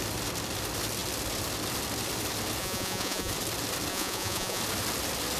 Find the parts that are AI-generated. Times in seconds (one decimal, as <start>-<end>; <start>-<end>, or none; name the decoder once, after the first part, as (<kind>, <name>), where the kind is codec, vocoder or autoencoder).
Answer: 2.6-3.3 (vocoder, Vocos); 3.9-4.6